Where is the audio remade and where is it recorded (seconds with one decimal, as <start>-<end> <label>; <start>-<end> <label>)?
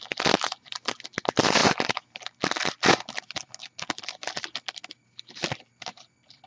0.0-6.5 recorded